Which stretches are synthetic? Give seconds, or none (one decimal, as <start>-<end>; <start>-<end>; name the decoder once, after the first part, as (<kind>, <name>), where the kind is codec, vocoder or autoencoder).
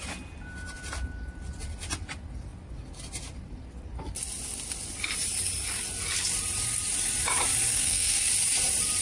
7.7-8.3 (codec, SNAC)